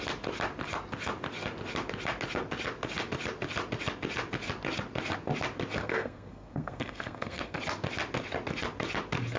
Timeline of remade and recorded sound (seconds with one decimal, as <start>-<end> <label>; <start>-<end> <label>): 0.0-5.8 recorded; 5.8-7.6 remade; 7.6-9.4 recorded